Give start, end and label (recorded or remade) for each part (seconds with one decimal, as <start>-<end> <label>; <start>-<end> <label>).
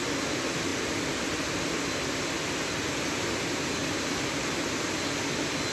0.0-5.7 recorded